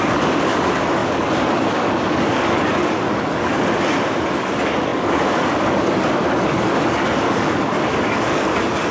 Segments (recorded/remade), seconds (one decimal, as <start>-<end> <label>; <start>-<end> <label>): 0.0-3.5 remade; 3.5-4.4 recorded; 4.4-8.9 remade